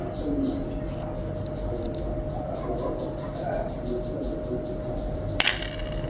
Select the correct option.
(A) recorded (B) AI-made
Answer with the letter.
A